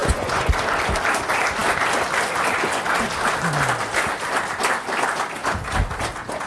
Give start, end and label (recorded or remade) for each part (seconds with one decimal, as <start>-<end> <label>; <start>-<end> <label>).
0.0-0.5 remade; 0.5-6.5 recorded